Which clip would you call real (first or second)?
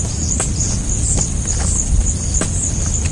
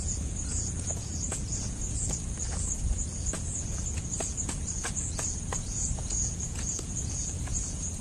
first